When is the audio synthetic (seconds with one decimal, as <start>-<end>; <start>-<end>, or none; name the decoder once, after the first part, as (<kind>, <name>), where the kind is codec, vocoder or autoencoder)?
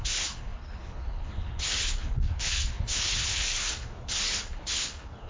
0.0-5.3 (codec, HILCodec)